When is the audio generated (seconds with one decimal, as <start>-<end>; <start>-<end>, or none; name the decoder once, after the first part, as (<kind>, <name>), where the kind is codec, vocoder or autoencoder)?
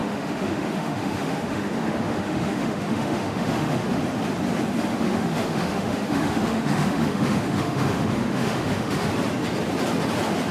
0.0-4.0 (autoencoder, DAC-VAE); 4.9-9.1